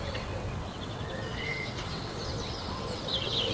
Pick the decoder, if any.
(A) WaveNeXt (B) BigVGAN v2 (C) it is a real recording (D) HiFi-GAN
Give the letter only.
A